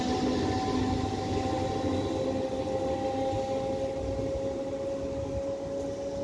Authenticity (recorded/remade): recorded